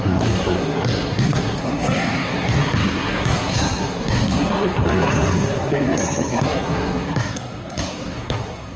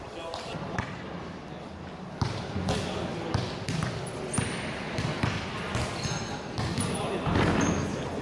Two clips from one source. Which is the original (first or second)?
second